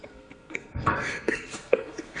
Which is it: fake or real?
fake